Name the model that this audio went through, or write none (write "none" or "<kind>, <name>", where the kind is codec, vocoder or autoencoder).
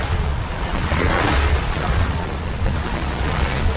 vocoder, Vocos